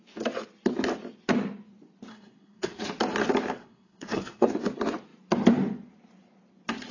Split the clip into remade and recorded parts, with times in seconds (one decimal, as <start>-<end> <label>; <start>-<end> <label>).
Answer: 0.0-2.1 recorded; 2.1-2.8 remade; 2.8-3.6 recorded; 3.6-4.5 remade; 4.5-6.9 recorded